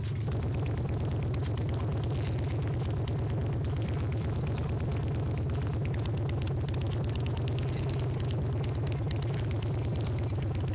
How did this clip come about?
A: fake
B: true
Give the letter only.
B